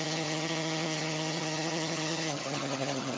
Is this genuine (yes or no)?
no